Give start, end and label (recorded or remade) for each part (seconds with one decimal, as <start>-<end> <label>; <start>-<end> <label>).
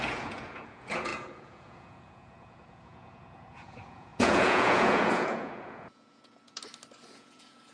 0.0-6.6 remade; 6.6-7.1 recorded; 7.1-7.7 remade